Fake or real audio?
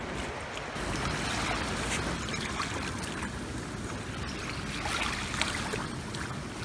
real